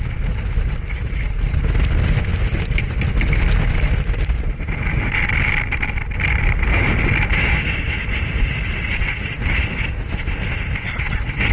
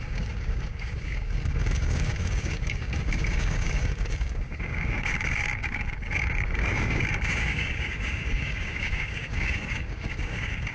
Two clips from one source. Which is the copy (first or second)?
second